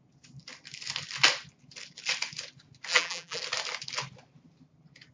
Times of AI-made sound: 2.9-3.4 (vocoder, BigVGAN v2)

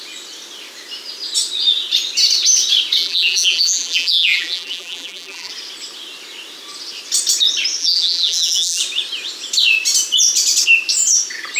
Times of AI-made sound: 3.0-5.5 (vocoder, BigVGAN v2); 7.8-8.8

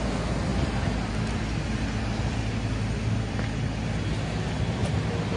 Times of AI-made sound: 4.8-5.4 (vocoder, BigVGAN v2)